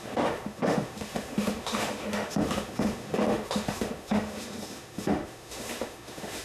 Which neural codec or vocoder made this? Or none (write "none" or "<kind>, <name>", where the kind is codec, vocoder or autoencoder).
autoencoder, DAC-VAE